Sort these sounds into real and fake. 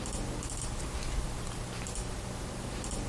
real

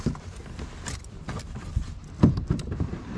real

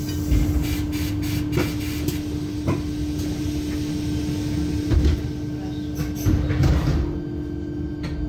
real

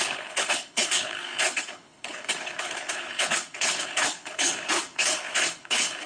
fake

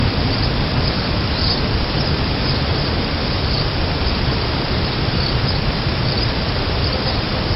fake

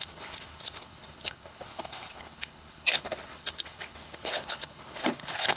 fake